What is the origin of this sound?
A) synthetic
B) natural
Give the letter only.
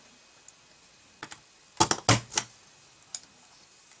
B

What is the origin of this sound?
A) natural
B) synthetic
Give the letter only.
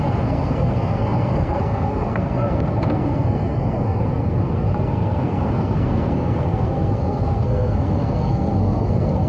B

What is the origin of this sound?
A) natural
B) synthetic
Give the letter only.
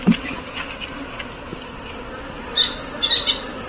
A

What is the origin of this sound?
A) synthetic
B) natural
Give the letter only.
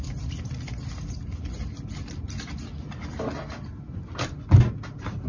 B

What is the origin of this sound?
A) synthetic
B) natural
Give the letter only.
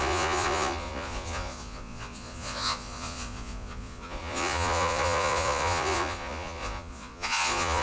A